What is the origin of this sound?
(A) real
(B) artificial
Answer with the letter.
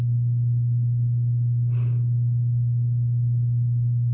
A